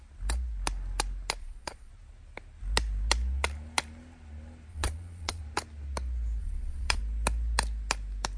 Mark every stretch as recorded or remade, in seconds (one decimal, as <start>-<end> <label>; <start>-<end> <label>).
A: 0.0-1.4 recorded; 1.4-1.9 remade; 1.9-4.7 recorded; 4.7-5.4 remade; 5.4-6.4 recorded; 6.4-7.0 remade; 7.0-8.4 recorded